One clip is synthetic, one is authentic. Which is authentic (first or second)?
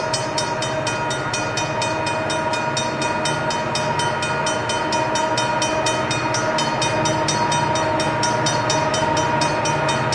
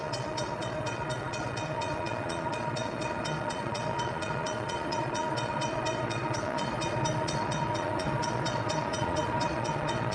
first